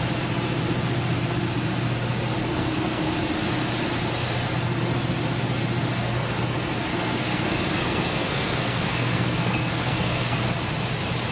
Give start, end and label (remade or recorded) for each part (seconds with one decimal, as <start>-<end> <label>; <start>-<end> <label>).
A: 0.0-2.4 recorded; 2.4-3.1 remade; 3.1-6.9 recorded; 6.9-10.4 remade; 10.4-11.3 recorded